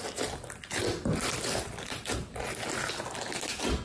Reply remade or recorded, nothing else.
recorded